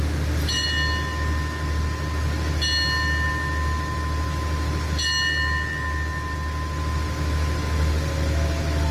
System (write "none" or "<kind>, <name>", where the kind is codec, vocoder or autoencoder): none